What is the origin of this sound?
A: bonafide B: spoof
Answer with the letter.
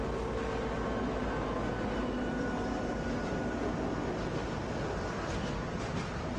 A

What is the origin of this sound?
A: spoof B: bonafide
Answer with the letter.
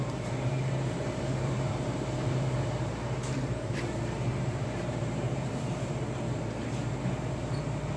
A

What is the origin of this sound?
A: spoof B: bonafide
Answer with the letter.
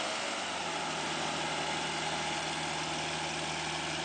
B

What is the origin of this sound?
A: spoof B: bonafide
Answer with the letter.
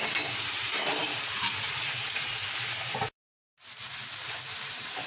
A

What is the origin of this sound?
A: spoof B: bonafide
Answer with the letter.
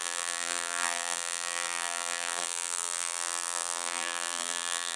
A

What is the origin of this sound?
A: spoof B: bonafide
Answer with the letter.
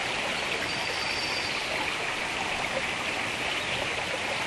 B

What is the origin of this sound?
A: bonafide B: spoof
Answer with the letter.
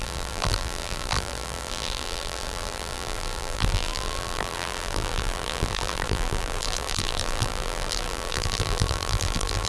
B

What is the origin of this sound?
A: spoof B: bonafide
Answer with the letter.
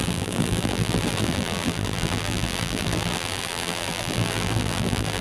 A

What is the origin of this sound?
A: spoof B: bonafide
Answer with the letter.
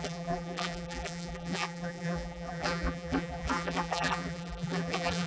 A